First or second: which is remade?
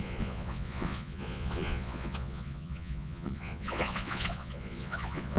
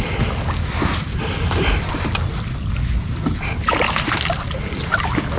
first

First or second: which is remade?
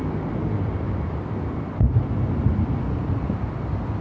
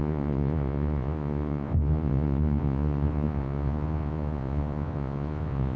second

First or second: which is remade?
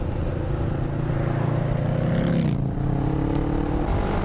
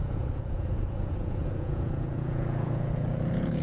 second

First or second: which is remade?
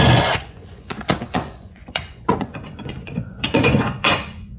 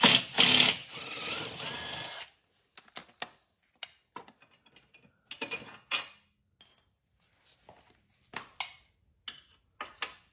first